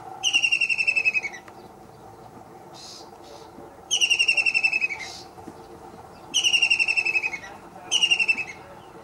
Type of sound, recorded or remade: remade